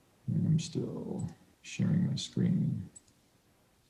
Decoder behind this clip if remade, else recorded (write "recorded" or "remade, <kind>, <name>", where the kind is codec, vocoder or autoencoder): recorded